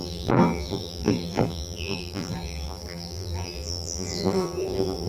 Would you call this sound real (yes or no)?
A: no